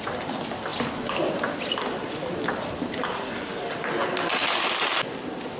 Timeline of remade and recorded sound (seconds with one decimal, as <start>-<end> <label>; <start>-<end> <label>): 0.0-4.4 recorded; 4.4-4.9 remade; 4.9-5.6 recorded